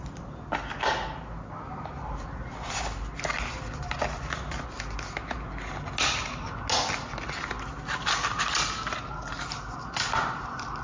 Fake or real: real